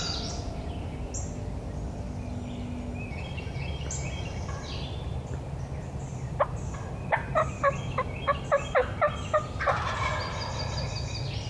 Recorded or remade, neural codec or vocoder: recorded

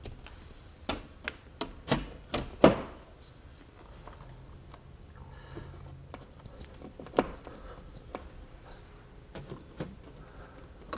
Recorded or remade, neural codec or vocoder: recorded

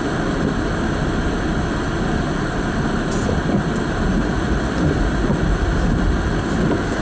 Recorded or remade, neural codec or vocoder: remade, vocoder, BigVGAN v2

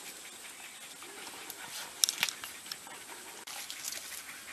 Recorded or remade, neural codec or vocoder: recorded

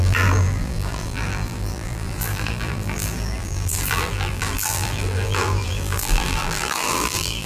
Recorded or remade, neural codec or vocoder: remade, vocoder, BigVGAN v2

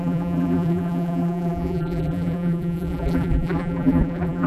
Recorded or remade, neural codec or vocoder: remade, vocoder, BigVGAN v2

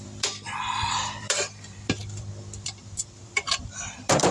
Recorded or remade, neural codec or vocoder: remade, vocoder, BigVGAN v2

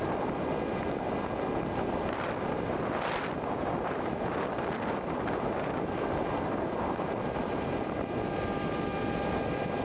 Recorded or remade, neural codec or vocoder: remade, vocoder, BigVGAN v2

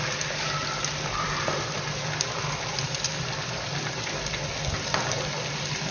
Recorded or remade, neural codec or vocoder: remade, vocoder, BigVGAN v2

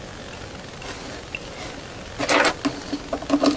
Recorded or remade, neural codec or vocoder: recorded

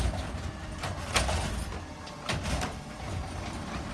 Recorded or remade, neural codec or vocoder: recorded